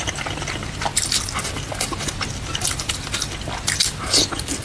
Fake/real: real